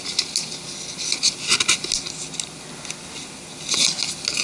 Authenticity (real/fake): real